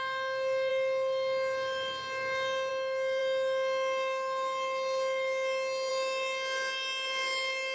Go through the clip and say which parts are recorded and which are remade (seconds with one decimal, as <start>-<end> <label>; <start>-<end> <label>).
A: 0.0-7.7 recorded